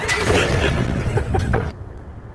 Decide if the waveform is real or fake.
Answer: fake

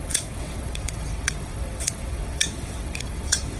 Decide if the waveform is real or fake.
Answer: fake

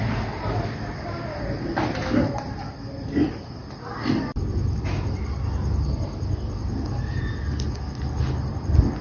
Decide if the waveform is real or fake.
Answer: real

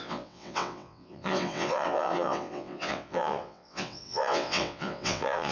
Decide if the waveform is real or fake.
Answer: fake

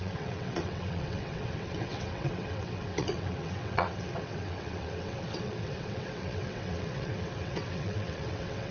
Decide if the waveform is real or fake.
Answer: fake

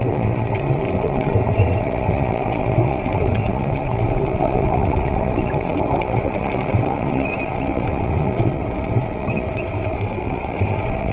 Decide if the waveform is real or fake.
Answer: fake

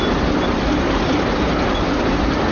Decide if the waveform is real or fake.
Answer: real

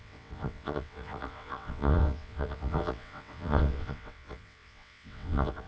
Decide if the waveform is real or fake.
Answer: fake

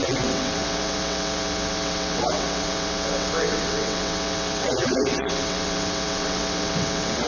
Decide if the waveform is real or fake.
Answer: fake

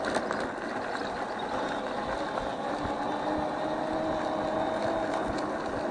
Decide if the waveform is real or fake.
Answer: real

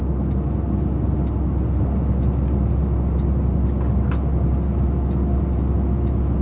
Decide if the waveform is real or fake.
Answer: real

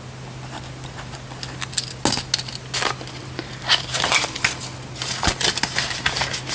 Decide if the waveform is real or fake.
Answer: real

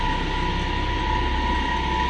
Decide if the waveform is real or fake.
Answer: real